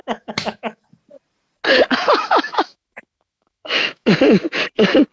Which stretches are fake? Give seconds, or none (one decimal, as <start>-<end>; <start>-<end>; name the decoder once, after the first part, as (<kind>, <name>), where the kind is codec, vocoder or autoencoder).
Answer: 0.0-0.8 (autoencoder, DAC-VAE); 1.9-4.6